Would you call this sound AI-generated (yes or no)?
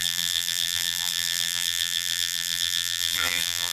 yes